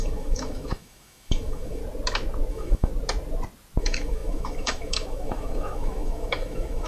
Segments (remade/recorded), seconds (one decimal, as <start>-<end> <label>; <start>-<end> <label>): 0.0-1.8 remade; 1.8-2.5 recorded; 2.5-2.9 remade; 2.9-3.8 recorded; 3.8-6.9 remade